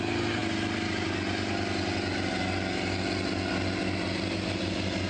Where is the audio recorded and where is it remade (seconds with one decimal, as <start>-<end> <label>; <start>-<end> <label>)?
0.0-5.1 recorded